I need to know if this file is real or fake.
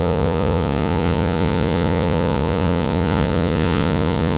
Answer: fake